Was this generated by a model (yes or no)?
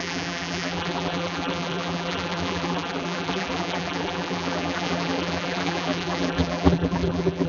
yes